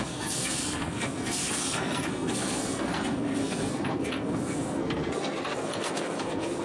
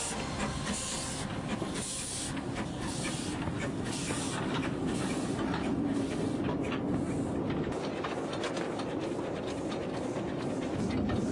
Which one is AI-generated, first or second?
first